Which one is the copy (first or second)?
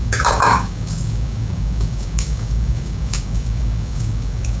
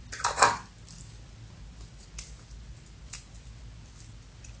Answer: first